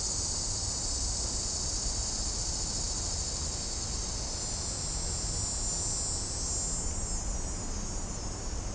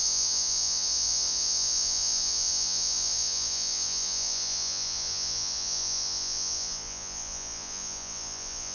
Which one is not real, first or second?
second